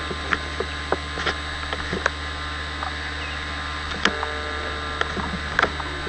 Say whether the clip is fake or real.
real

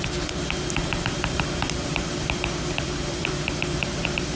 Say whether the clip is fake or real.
fake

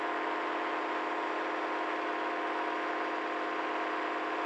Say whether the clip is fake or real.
fake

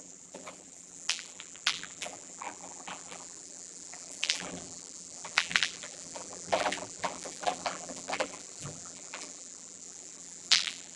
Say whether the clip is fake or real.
fake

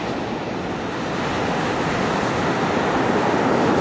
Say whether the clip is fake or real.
real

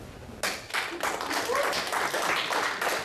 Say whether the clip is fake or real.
real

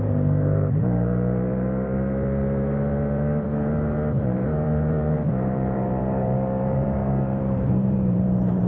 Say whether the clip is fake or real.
fake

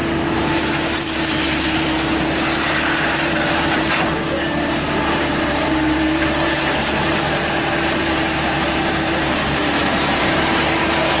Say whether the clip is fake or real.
fake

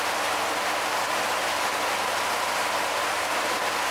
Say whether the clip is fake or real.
real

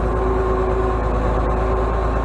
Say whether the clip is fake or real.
real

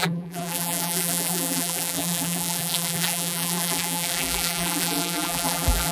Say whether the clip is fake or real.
fake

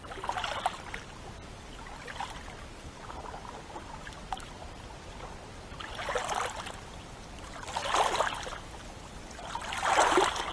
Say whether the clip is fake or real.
real